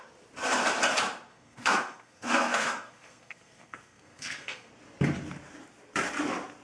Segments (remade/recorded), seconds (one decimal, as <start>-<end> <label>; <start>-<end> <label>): 0.0-1.3 recorded; 1.3-4.7 remade; 4.7-6.6 recorded